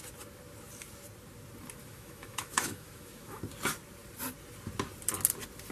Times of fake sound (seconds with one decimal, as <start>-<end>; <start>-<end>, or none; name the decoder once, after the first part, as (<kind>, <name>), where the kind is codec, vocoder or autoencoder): 1.8-3.4 (autoencoder, DAC-VAE)